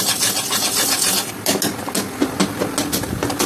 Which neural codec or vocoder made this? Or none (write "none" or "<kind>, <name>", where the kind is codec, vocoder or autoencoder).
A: none